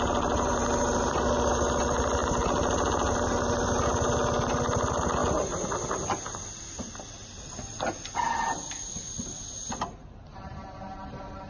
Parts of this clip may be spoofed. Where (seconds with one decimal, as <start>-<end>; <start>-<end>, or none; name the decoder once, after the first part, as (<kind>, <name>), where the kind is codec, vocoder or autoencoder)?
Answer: none